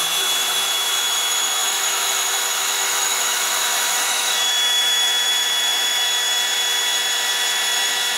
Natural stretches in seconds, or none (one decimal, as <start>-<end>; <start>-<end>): none